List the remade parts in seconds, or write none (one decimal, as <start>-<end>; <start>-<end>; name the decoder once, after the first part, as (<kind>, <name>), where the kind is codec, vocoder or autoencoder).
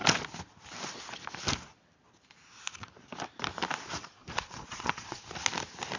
4.2-5.2 (vocoder, Vocos)